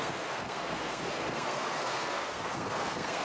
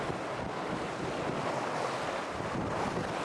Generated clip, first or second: first